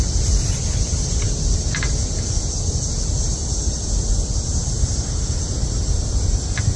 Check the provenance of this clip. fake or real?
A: real